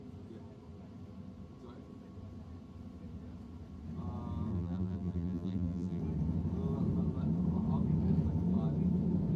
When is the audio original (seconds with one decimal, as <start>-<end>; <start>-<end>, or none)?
0.0-4.5; 6.0-9.4

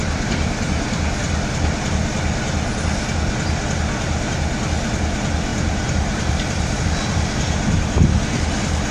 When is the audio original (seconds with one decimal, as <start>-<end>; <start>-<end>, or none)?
0.0-5.5; 6.8-8.9

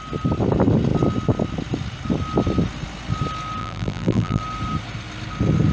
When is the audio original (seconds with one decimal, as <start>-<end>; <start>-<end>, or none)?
0.0-3.6; 4.4-5.7

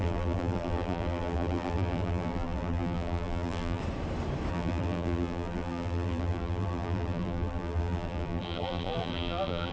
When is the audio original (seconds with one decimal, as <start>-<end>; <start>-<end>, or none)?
3.8-4.5

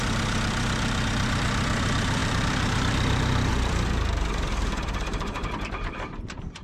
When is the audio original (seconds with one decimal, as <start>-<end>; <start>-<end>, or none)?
none

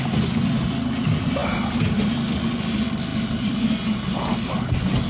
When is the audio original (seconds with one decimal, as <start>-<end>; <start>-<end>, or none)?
0.0-3.1

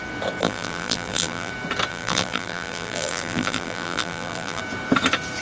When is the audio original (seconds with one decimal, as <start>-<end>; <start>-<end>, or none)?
0.0-0.4; 1.5-1.9; 4.6-5.4

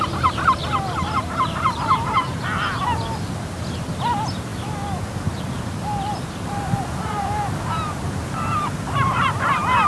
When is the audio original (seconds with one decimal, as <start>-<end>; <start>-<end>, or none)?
0.6-1.2; 2.4-3.9; 4.5-5.2